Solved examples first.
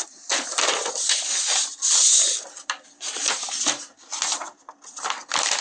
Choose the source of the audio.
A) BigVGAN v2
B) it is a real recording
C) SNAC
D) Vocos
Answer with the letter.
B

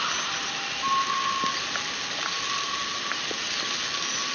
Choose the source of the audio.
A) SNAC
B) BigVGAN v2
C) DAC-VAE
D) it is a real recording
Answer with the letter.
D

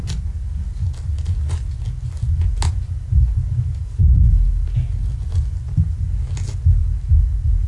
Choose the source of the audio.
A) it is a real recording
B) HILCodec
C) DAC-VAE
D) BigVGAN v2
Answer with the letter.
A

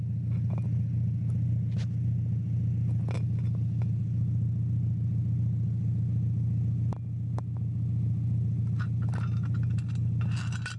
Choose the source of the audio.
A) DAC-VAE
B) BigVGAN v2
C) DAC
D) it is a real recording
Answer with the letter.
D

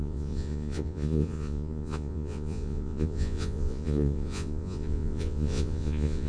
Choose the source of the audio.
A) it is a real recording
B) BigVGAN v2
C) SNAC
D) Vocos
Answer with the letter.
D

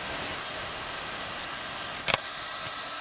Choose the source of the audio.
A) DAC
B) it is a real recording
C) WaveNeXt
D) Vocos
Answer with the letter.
B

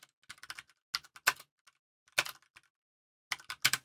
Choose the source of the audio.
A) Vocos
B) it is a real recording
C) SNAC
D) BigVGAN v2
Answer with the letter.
B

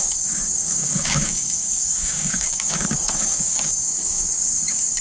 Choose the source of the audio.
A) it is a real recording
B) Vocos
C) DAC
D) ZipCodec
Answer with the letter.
C